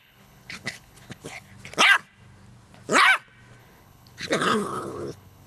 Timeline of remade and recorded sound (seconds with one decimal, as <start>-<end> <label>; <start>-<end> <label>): 0.0-1.5 remade; 1.5-3.6 recorded; 3.6-5.5 remade